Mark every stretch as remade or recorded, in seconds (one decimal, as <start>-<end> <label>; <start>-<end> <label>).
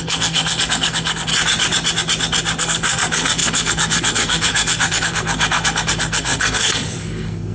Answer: 0.0-1.3 remade; 1.3-2.6 recorded; 2.6-7.5 remade